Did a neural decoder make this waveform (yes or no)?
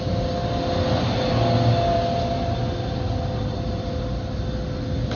no